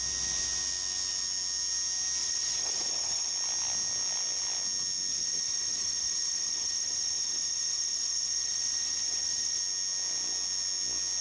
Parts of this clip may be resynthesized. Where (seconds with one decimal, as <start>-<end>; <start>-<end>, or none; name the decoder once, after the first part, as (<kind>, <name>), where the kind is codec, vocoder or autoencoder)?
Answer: 2.2-3.3 (vocoder, WaveNeXt); 5.1-9.6